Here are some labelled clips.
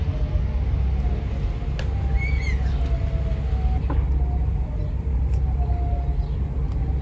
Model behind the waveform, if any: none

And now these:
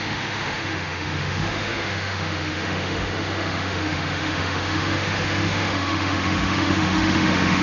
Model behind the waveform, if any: autoencoder, DAC-VAE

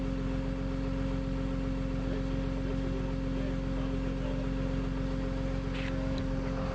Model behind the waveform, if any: none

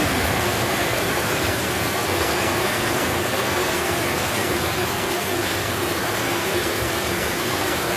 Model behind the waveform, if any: codec, SNAC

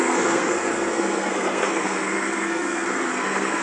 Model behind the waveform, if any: codec, SNAC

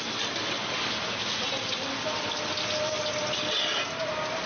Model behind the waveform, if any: none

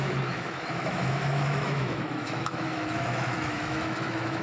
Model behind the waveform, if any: autoencoder, DAC-VAE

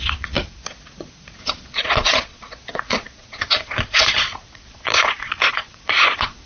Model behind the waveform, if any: vocoder, Vocos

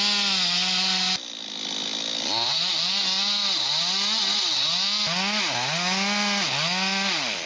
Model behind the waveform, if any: none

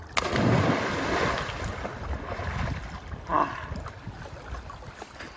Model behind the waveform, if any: none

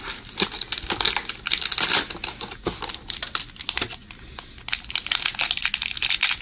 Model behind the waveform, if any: none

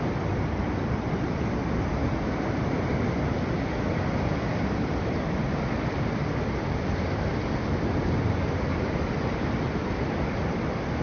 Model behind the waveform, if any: none